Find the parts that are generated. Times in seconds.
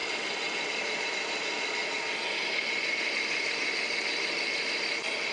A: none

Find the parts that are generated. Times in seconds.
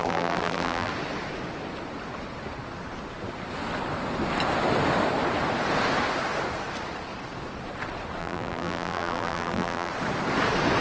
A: 0.0-0.9 (vocoder, BigVGAN v2); 8.2-9.9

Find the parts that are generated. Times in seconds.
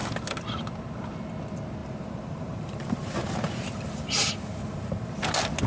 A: 1.8-5.2 (vocoder, BigVGAN v2)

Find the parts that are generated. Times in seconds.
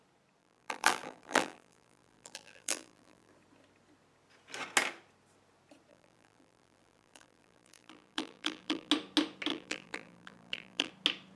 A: 0.4-3.3 (vocoder, BigVGAN v2); 5.9-8.9; 9.5-10.9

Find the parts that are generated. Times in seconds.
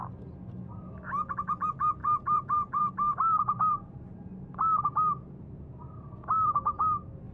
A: 2.0-4.8 (vocoder, BigVGAN v2)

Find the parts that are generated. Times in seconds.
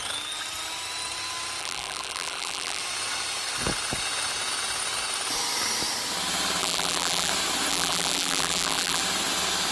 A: 1.6-2.8 (vocoder, BigVGAN v2); 6.6-7.3; 7.7-9.0